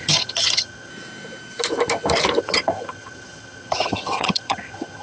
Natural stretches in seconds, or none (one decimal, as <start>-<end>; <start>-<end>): 0.9-2.4